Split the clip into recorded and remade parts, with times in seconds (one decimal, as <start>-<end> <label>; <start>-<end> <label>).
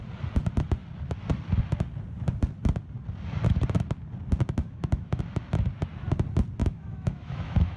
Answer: 0.0-4.6 recorded; 4.6-5.2 remade; 5.2-6.6 recorded; 6.6-7.8 remade